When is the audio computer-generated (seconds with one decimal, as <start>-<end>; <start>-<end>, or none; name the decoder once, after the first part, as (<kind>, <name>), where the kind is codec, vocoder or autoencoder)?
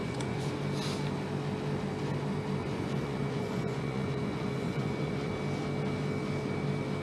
0.0-0.5 (vocoder, Vocos); 2.6-5.3